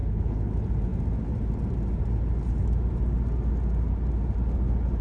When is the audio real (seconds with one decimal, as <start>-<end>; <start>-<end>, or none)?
0.5-5.0